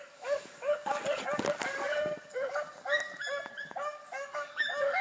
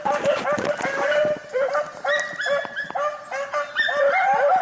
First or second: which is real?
second